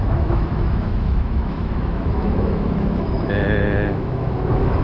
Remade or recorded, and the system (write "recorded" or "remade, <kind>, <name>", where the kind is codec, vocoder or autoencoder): remade, autoencoder, DAC-VAE